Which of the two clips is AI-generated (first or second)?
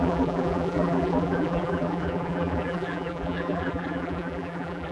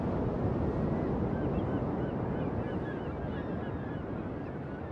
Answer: first